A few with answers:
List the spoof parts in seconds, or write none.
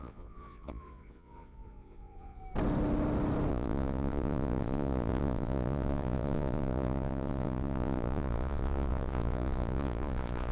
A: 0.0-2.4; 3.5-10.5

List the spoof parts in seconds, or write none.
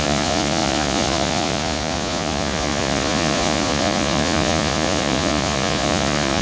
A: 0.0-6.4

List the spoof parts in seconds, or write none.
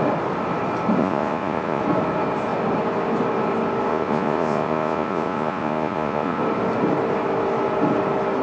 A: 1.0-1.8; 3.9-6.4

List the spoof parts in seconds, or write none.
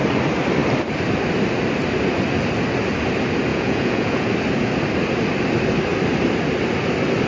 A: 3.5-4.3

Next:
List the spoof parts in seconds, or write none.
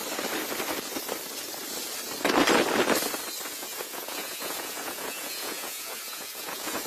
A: 3.5-6.9